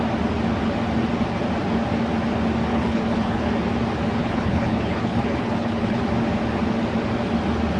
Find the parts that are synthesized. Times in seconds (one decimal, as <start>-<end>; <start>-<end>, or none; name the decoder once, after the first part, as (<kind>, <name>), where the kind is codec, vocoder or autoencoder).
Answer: 2.7-3.5 (codec, HILCodec); 4.2-6.0